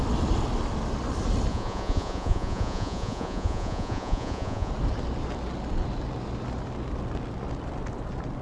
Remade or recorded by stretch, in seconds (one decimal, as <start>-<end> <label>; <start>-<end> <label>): 0.0-1.5 recorded; 1.5-4.7 remade; 4.7-8.4 recorded